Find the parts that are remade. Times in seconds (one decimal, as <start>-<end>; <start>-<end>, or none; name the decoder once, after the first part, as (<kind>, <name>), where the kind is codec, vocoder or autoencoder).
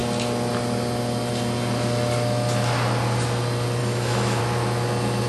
3.8-4.4 (autoencoder, DAC-VAE)